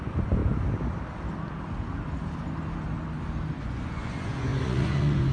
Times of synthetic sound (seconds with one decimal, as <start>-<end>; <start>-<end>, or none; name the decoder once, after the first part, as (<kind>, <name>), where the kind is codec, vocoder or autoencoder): 0.0-0.4 (vocoder, Vocos); 3.6-5.3